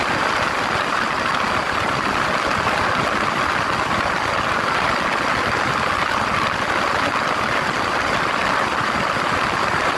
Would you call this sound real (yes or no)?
yes